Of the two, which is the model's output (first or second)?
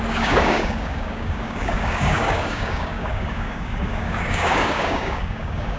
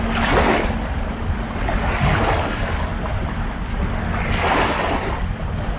first